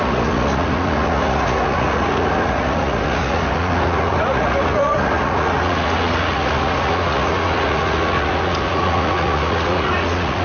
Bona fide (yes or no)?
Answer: no